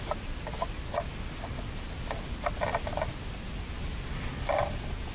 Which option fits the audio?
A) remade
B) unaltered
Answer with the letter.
B